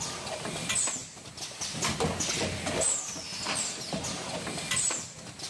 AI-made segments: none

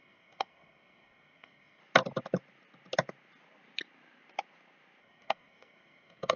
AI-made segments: 0.0-1.8 (codec, SNAC); 5.0-6.4

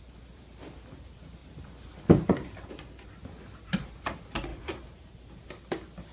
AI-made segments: none

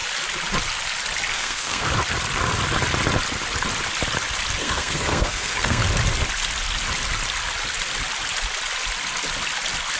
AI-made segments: 1.3-1.9 (codec, SNAC); 4.6-5.8

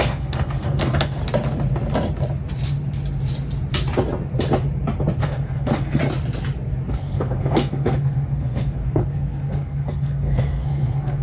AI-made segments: 0.0-1.2 (codec, SNAC); 5.2-6.0; 6.9-11.2